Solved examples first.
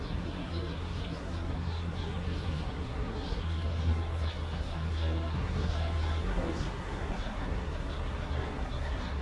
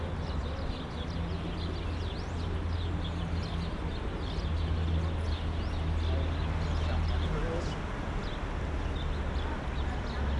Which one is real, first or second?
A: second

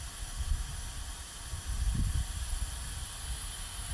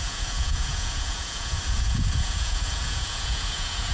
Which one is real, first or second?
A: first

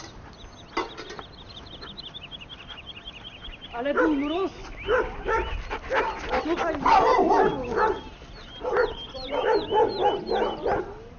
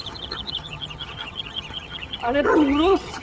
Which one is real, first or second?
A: first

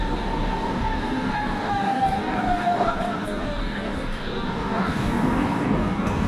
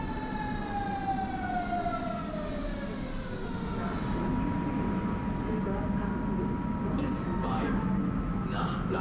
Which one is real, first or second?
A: second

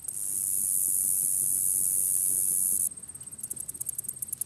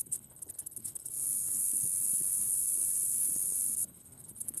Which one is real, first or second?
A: first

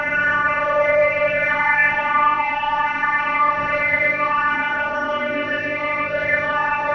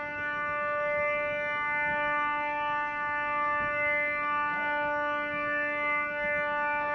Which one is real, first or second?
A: second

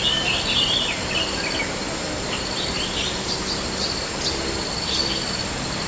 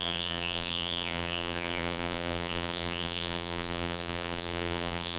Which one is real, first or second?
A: first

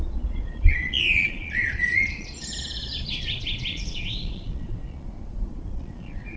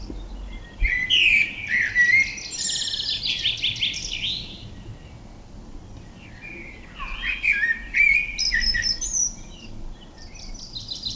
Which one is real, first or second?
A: second